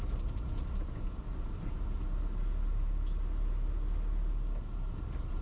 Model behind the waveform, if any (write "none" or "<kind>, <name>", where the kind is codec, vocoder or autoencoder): none